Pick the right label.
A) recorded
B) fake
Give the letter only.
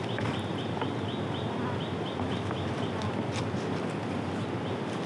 A